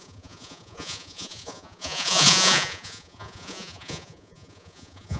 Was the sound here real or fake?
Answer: fake